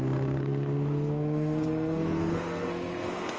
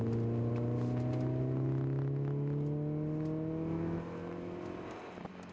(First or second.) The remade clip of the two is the first